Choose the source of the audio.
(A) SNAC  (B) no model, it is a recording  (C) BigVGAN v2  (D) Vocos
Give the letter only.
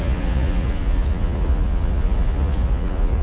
D